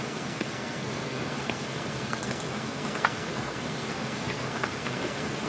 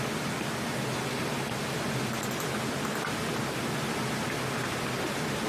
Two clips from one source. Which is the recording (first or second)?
second